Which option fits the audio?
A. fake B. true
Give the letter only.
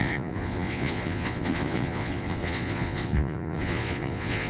A